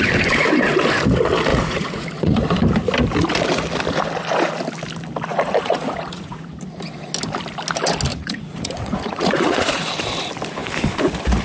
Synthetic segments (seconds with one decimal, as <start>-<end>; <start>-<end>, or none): 1.5-2.4; 5.3-6.5; 8.1-9.9